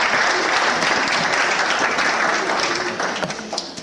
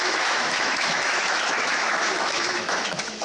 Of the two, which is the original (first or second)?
first